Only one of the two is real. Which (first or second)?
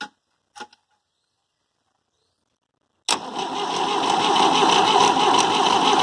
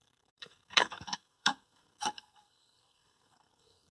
first